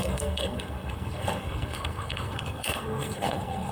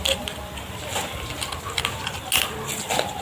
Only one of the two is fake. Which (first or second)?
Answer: first